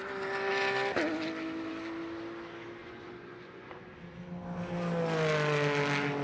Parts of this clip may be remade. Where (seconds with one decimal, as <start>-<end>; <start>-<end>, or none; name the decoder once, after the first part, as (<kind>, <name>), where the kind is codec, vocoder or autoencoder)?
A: 2.8-4.0 (vocoder, Vocos)